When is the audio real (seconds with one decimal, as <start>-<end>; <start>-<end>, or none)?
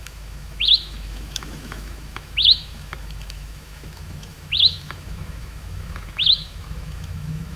none